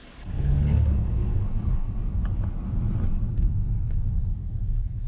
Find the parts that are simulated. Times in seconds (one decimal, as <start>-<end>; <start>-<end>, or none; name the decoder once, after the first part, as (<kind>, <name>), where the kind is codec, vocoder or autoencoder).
0.0-2.2 (codec, SNAC); 3.3-5.1